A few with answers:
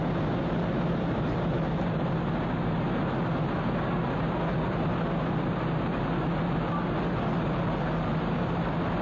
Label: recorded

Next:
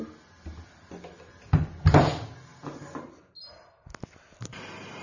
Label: recorded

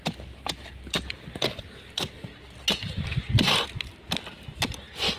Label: recorded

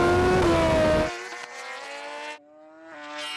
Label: recorded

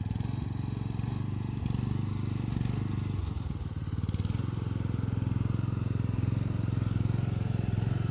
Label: recorded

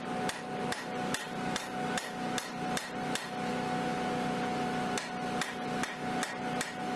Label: recorded